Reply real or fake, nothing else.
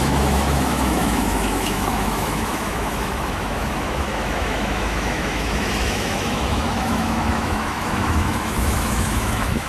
fake